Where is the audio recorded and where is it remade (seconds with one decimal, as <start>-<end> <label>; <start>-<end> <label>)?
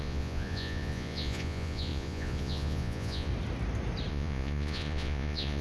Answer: 0.0-3.3 remade; 3.3-4.1 recorded; 4.1-5.6 remade